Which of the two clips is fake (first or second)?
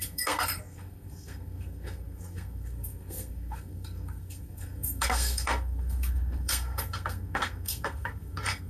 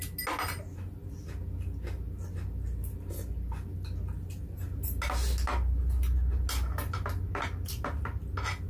first